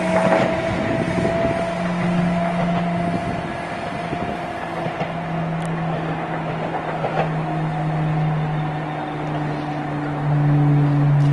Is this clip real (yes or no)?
yes